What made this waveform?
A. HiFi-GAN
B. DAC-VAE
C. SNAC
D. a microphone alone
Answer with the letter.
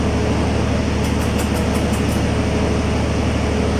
D